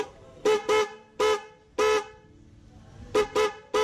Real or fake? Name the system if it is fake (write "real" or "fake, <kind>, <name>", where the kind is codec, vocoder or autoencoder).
real